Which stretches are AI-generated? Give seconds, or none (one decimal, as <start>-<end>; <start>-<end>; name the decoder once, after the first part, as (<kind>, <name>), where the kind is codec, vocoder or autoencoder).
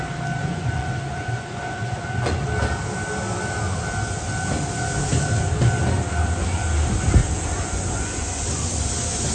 0.4-2.4 (vocoder, Vocos); 7.2-8.9